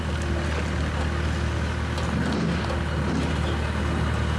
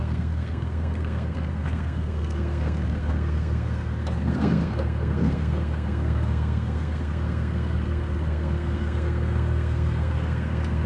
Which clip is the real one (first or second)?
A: first